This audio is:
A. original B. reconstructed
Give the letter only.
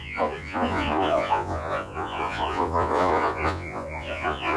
B